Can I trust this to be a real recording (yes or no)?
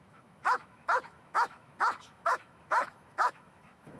no